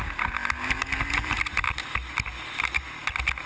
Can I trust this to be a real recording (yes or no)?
yes